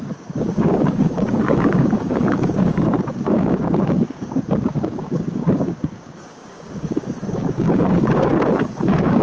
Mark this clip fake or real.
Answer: fake